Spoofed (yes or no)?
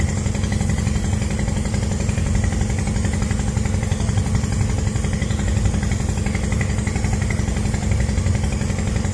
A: no